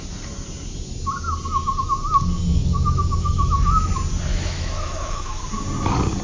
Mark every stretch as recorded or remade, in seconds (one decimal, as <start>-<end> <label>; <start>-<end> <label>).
0.0-2.5 recorded; 2.5-3.9 remade; 3.9-4.3 recorded; 4.3-5.4 remade; 5.4-6.2 recorded

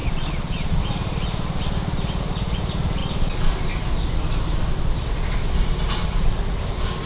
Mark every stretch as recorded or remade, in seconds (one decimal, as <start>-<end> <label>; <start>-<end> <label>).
0.0-0.8 remade; 0.8-7.1 recorded

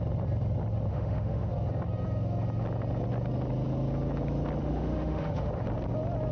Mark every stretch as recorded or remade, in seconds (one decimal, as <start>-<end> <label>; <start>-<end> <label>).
0.0-0.9 recorded; 0.9-1.5 remade; 1.5-4.6 recorded; 4.6-5.5 remade; 5.5-6.3 recorded

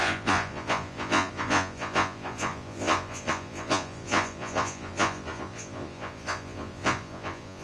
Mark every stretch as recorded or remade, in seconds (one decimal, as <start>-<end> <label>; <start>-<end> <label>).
0.0-7.6 remade

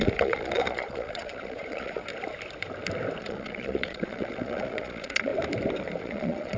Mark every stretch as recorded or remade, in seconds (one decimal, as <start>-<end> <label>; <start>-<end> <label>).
0.0-2.1 remade; 2.1-3.2 recorded; 3.2-5.3 remade; 5.3-6.0 recorded; 6.0-6.6 remade

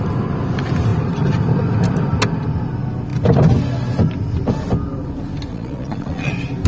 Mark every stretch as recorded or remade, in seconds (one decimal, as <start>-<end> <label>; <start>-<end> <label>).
0.0-5.5 recorded; 5.5-6.3 remade; 6.3-6.7 recorded